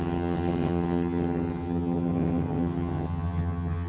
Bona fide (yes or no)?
no